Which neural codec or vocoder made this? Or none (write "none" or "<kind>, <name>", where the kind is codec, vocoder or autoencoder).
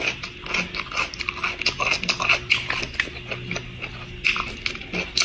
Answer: none